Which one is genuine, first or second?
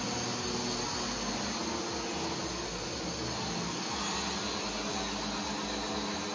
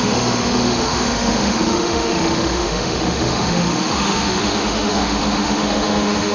first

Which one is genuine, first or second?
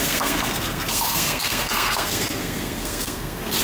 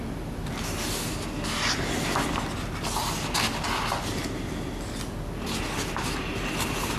second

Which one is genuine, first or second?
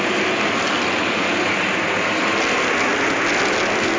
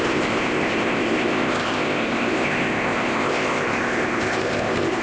first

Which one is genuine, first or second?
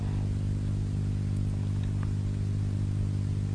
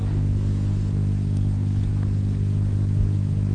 first